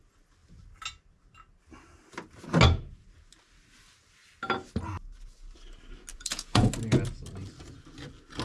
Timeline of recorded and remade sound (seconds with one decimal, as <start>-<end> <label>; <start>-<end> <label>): 0.0-6.1 recorded; 6.1-6.7 remade; 6.7-8.4 recorded

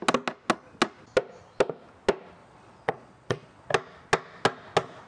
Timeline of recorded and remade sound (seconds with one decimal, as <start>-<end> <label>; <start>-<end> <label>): 0.0-2.4 recorded; 2.4-3.7 remade; 3.7-5.1 recorded

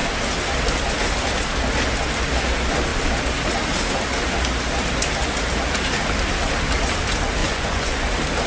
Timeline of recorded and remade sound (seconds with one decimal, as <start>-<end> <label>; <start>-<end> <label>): 0.0-7.4 recorded; 7.4-8.1 remade; 8.1-8.5 recorded

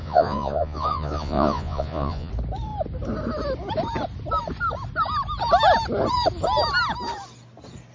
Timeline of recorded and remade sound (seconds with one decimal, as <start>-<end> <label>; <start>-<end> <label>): 0.0-2.3 remade; 2.3-7.9 recorded

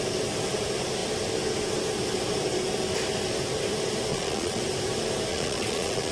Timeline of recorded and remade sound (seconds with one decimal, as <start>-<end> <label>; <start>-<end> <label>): 0.0-4.1 recorded; 4.1-4.6 remade; 4.6-5.3 recorded; 5.3-6.1 remade

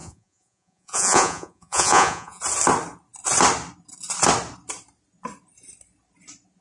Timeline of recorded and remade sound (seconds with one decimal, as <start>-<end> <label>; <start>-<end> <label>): 0.0-2.4 remade; 2.4-6.6 recorded